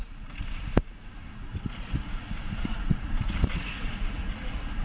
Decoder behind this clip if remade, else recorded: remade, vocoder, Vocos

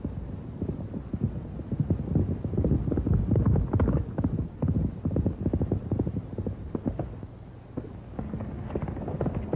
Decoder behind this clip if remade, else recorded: recorded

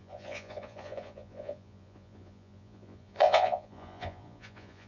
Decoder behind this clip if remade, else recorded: remade, vocoder, Vocos